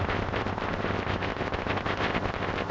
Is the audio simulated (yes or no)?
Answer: yes